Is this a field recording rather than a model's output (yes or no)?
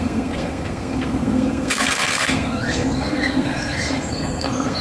no